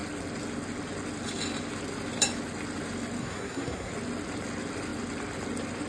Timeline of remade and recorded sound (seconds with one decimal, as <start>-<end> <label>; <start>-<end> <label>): 0.0-3.2 recorded; 3.2-3.9 remade; 3.9-5.9 recorded